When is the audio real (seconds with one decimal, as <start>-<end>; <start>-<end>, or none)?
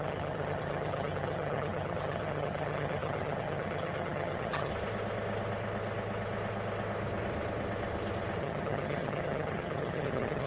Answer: 4.7-8.4